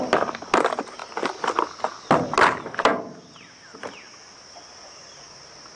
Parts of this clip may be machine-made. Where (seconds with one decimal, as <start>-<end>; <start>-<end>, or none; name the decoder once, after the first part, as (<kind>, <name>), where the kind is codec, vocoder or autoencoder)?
none